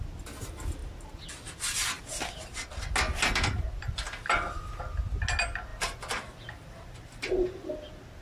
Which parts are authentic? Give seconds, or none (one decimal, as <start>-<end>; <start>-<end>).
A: 0.0-5.7; 7.7-8.2